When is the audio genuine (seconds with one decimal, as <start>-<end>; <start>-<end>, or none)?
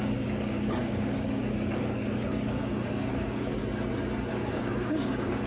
3.6-4.3